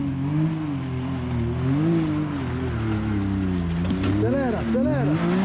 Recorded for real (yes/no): yes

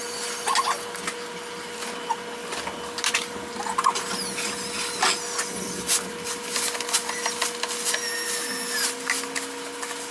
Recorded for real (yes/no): yes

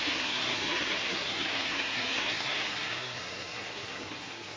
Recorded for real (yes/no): no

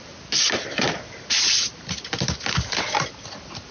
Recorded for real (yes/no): yes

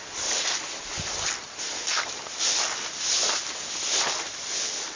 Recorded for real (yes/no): yes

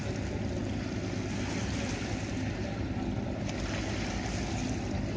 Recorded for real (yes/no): yes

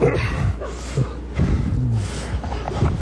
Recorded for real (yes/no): yes